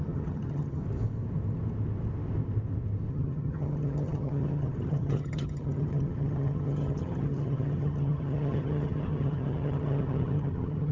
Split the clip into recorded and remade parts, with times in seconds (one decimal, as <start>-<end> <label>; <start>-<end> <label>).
0.0-0.8 remade; 0.8-3.1 recorded; 3.1-10.9 remade